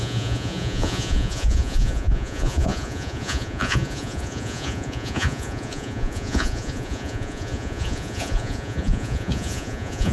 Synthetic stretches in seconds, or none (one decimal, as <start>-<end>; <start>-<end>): 0.0-10.1